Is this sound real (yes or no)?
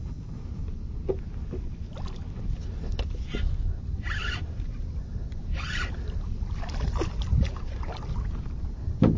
yes